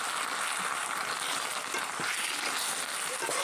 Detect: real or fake real